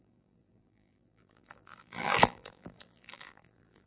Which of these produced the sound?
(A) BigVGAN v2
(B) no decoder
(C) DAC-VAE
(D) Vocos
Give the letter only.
A